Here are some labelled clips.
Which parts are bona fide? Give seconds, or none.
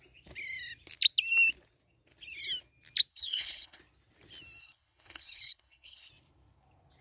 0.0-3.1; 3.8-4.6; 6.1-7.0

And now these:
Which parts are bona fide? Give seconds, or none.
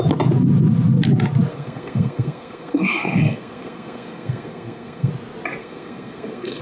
0.0-1.5; 5.1-5.6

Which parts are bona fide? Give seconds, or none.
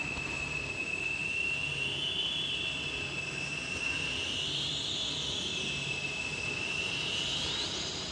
0.0-8.1